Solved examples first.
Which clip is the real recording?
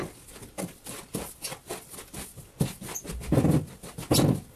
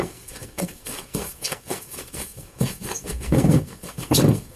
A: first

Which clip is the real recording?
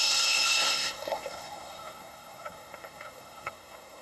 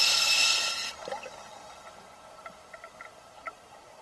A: second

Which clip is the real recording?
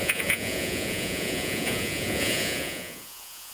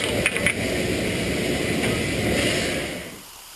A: second